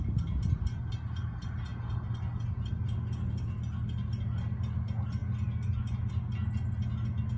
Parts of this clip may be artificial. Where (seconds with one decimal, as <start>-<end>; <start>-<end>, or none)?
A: none